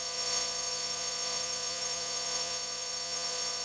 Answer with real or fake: fake